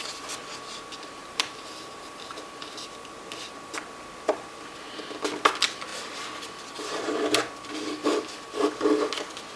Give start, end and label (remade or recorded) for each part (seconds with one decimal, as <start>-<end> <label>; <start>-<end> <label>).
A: 0.0-1.2 recorded; 1.2-2.3 remade; 2.3-9.6 recorded